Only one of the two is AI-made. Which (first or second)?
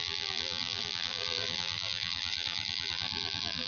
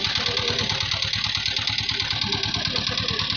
first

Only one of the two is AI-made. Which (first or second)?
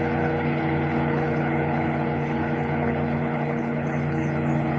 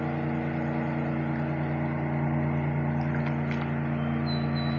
first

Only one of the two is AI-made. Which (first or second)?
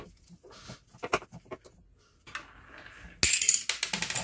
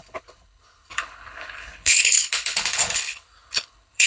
second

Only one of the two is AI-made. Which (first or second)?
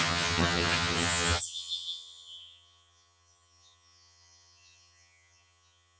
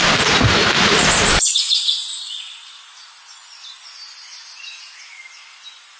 first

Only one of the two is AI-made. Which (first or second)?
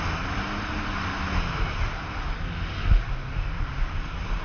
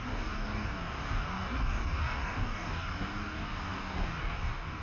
second